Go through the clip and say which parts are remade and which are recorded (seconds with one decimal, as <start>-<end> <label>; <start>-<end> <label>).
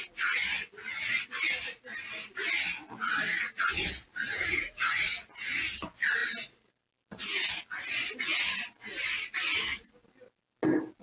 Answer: 0.0-11.0 recorded